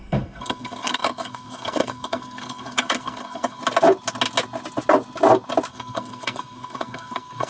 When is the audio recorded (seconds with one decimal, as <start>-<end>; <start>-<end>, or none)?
3.6-5.7